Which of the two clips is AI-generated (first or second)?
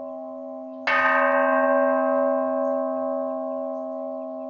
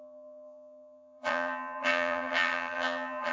second